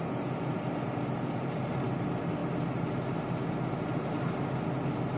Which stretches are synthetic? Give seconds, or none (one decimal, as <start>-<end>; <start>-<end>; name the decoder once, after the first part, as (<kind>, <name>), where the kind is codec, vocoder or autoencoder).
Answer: none